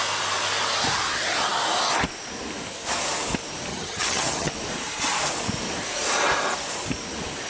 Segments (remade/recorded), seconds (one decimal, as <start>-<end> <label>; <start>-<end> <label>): 0.0-3.7 recorded; 3.7-4.5 remade; 4.5-7.5 recorded